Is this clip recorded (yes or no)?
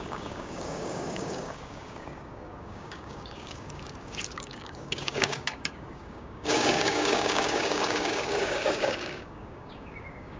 no